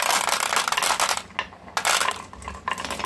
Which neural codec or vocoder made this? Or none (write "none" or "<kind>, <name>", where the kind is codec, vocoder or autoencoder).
none